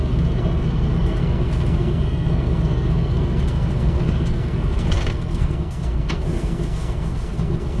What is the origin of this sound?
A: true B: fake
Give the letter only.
B